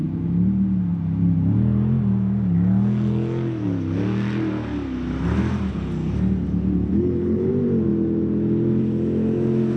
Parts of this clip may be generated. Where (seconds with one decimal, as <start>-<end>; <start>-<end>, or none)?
6.9-7.5